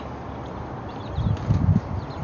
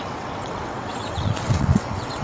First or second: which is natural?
first